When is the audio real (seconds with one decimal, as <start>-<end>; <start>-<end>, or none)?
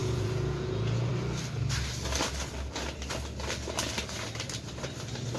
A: 1.1-5.4